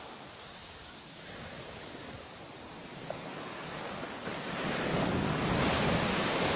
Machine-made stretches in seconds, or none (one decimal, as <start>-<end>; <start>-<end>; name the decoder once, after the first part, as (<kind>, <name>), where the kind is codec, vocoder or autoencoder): 0.5-2.3 (codec, DAC); 2.9-5.5